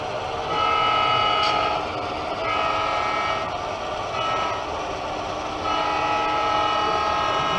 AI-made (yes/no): no